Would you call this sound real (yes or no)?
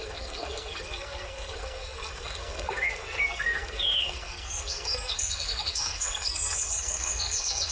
no